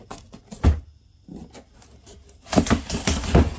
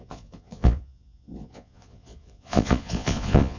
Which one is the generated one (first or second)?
second